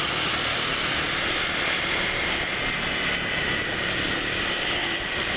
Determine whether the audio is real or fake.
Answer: real